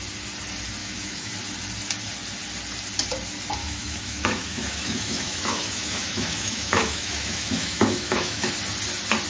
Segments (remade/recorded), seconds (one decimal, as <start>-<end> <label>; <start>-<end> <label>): 0.0-0.8 recorded; 0.8-1.3 remade; 1.3-3.6 recorded; 3.6-8.5 remade; 8.5-9.3 recorded